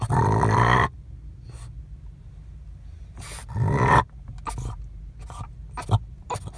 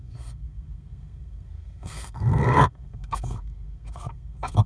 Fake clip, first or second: second